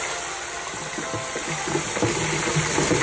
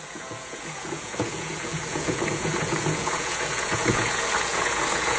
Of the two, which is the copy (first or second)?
second